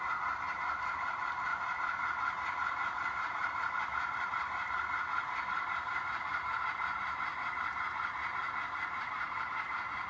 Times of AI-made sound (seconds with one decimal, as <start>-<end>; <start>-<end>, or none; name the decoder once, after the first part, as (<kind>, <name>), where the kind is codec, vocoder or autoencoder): 0.0-10.1 (vocoder, BigVGAN v2)